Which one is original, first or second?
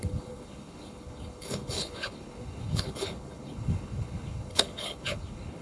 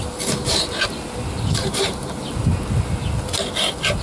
second